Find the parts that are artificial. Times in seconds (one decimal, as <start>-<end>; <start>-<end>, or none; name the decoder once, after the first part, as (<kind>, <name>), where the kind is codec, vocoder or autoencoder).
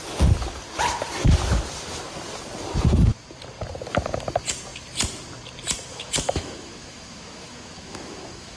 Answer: 5.9-8.6 (autoencoder, DAC-VAE)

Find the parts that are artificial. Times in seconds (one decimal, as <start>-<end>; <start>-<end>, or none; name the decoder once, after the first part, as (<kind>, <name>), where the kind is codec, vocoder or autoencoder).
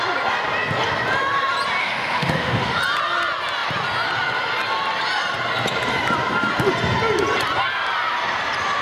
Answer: 1.8-2.8 (autoencoder, DAC-VAE)